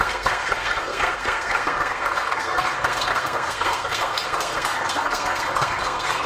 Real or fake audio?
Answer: fake